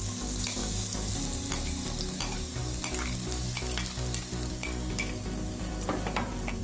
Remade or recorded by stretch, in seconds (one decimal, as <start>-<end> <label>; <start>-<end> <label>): 0.0-6.6 recorded